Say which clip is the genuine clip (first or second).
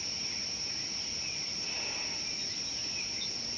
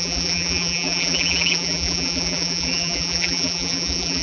first